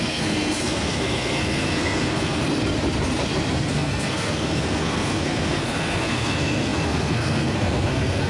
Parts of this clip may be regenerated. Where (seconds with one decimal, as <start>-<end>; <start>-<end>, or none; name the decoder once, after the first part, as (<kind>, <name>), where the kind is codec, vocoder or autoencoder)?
0.0-2.4 (codec, SNAC); 3.5-8.3

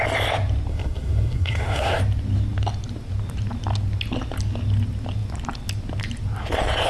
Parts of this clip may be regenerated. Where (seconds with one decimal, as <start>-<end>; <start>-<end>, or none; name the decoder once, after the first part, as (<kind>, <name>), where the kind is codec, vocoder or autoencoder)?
0.7-2.0 (codec, SNAC)

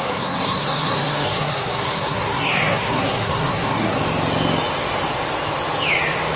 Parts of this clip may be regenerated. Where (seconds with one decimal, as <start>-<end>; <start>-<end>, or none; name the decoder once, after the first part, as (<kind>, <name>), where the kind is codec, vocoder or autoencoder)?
0.0-4.0 (codec, SNAC)